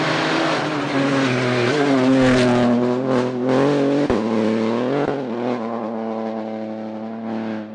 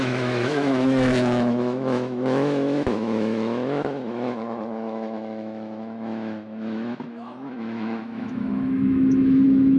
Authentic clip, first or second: first